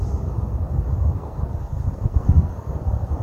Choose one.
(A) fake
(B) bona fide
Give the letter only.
A